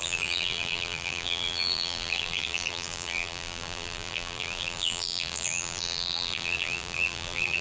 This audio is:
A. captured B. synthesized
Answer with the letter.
B